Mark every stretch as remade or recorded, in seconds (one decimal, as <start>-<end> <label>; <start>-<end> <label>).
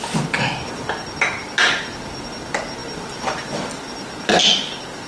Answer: 0.0-5.1 recorded